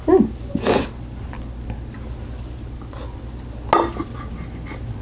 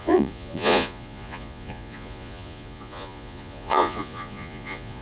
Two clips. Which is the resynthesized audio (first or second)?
second